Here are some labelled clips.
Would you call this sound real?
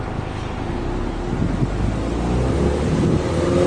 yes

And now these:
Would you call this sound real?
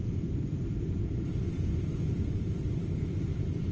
yes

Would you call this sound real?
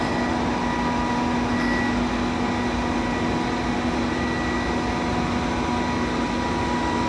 yes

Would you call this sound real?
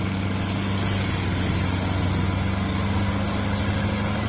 yes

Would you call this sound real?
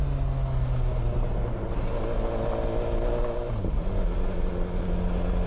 yes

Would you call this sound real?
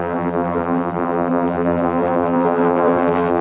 no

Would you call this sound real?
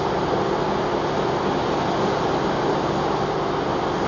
yes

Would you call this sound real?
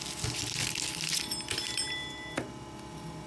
yes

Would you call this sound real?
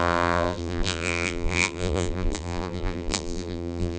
no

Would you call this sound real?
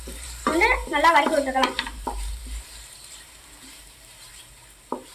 no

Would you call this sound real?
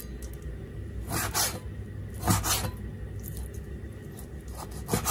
yes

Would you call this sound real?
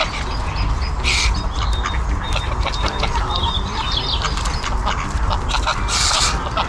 yes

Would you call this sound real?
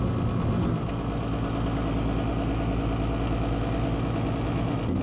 yes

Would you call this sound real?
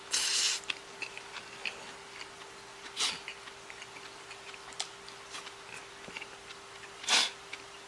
yes